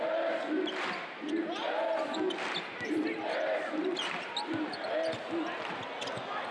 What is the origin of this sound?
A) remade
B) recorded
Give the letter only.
B